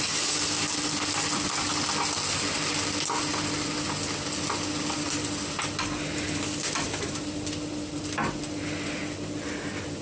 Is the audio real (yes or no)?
yes